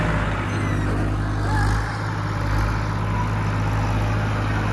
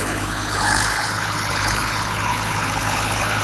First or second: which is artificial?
second